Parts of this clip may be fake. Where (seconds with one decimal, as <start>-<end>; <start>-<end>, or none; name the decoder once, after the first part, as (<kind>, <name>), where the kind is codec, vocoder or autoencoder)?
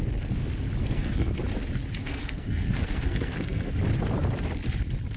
0.8-1.4 (codec, SNAC); 2.0-3.7